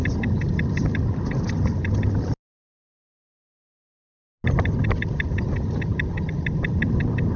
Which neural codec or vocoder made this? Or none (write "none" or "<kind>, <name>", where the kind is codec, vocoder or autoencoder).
none